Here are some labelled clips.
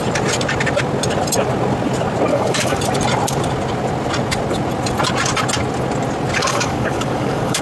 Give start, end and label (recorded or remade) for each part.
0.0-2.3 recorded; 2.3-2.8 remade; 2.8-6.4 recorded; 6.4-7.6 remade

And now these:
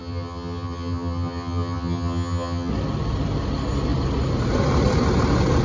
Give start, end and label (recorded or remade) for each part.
0.0-2.7 remade; 2.7-5.6 recorded

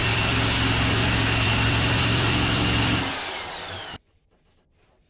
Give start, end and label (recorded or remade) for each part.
0.0-3.1 remade; 3.1-5.1 recorded

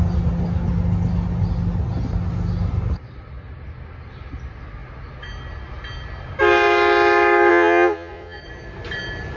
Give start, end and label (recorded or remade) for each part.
0.0-7.5 recorded; 7.5-8.4 remade; 8.4-9.4 recorded

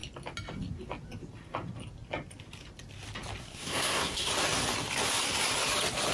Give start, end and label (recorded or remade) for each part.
0.0-3.4 recorded; 3.4-4.3 remade; 4.3-6.1 recorded

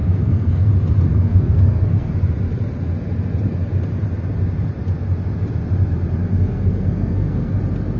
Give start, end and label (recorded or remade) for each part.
0.0-0.7 remade; 0.7-1.1 recorded; 1.1-2.1 remade; 2.1-6.2 recorded; 6.2-7.6 remade; 7.6-8.0 recorded

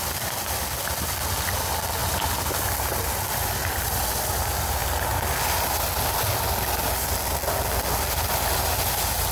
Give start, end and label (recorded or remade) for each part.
0.0-9.3 recorded